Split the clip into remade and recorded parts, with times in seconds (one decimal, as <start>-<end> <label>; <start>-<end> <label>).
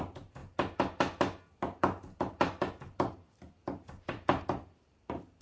0.0-0.4 remade; 0.4-2.2 recorded; 2.2-5.4 remade